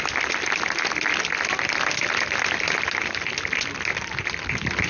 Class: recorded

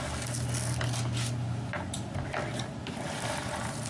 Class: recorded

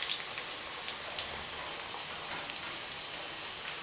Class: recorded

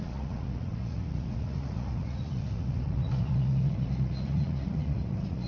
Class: remade